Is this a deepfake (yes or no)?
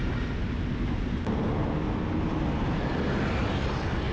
no